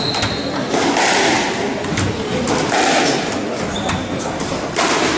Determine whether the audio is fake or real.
real